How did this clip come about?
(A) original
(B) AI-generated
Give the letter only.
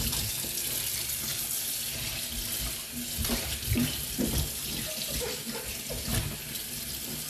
A